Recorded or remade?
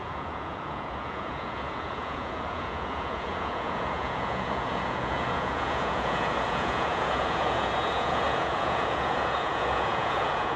remade